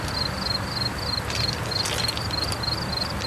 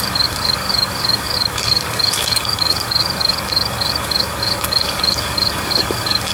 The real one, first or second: first